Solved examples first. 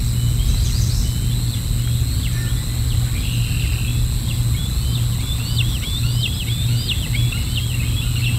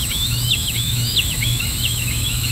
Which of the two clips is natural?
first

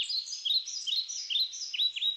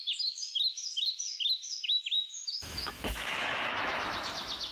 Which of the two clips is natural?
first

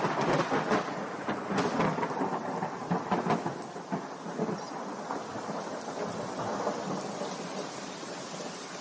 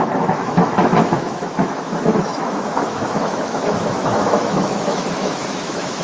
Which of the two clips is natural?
first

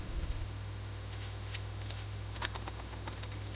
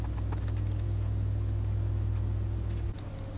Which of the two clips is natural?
second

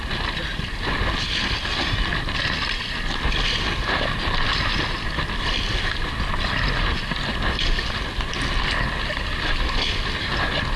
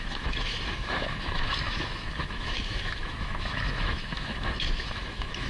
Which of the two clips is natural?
first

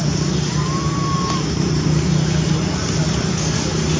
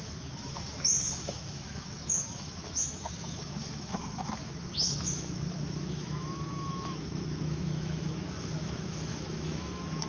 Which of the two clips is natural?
first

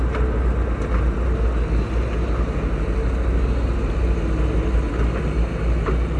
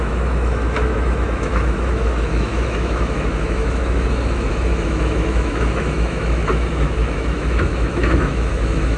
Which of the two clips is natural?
first